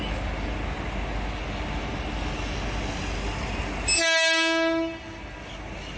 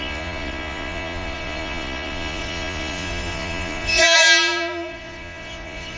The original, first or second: first